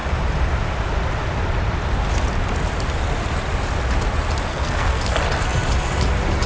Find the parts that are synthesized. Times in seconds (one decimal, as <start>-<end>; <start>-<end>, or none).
4.5-5.0